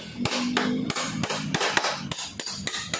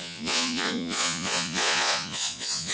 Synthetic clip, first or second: second